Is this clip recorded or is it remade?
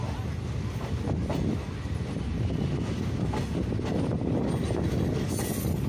recorded